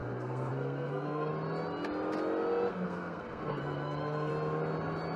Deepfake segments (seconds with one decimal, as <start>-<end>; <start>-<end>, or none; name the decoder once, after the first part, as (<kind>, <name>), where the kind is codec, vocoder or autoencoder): 0.0-1.3 (codec, SNAC); 2.7-4.3